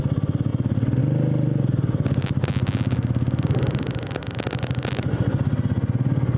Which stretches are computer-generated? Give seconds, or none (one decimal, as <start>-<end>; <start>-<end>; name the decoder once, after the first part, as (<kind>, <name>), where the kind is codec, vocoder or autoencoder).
none